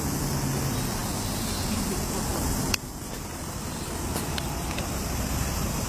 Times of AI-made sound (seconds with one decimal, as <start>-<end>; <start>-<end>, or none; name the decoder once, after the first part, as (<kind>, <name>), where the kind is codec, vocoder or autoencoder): 2.3-5.9 (vocoder, BigVGAN v2)